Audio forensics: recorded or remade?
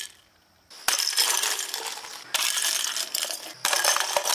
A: recorded